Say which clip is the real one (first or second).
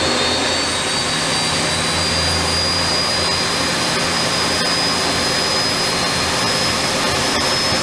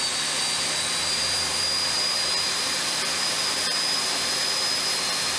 first